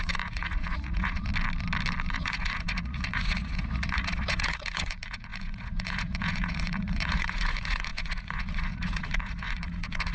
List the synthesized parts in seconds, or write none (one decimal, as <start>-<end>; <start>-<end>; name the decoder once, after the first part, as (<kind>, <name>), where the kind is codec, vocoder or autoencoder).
0.0-1.3 (vocoder, Vocos); 2.1-10.1